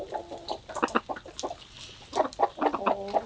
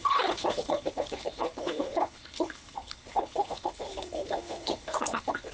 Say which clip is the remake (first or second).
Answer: second